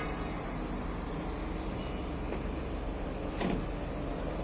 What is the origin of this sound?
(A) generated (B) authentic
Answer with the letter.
B